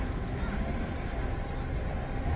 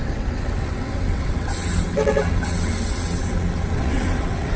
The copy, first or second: second